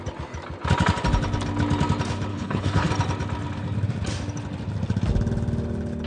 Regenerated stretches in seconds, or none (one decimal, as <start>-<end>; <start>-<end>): 2.3-2.9